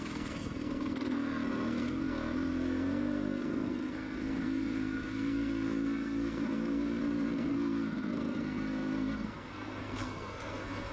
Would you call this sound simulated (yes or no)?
yes